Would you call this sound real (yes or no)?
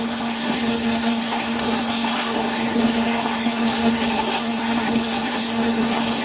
no